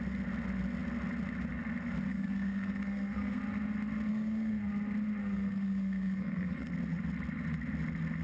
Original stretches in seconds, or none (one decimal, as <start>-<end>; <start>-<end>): 0.0-2.1; 3.4-4.1; 4.7-5.2; 6.7-8.2